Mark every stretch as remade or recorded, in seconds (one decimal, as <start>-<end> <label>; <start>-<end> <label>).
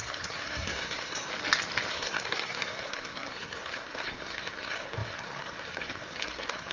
0.0-1.3 remade; 1.3-1.9 recorded; 1.9-6.7 remade